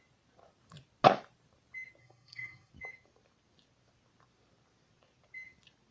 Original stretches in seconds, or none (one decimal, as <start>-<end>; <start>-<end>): 0.0-2.0; 2.7-5.9